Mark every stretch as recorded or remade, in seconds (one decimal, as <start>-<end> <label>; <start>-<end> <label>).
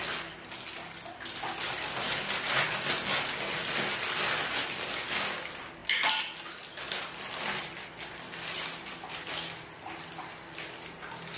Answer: 0.0-11.4 recorded